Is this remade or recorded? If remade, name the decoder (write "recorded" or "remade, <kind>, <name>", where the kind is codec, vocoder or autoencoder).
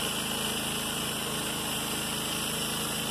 recorded